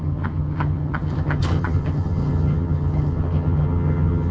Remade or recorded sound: remade